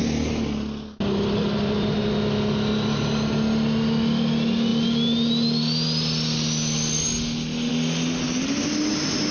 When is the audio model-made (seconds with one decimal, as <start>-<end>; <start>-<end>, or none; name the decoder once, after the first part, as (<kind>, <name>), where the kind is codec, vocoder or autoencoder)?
none